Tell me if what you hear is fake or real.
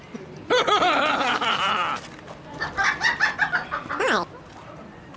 real